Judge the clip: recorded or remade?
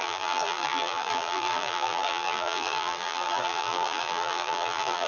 remade